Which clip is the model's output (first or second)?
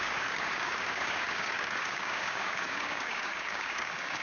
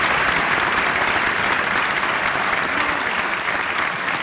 first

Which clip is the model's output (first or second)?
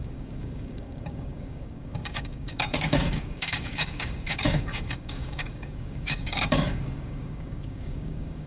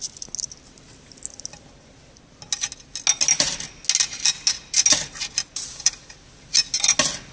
first